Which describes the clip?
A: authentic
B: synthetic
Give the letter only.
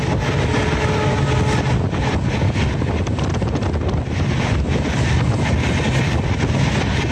A